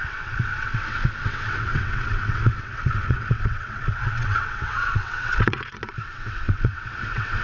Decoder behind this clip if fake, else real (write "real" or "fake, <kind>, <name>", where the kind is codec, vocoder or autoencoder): fake, vocoder, WaveNeXt